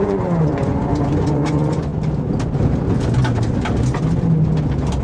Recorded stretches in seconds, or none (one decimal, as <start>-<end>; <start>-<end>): 1.9-5.0